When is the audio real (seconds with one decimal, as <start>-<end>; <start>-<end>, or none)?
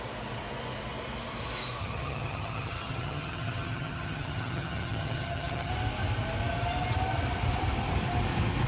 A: 0.0-1.8; 5.7-8.7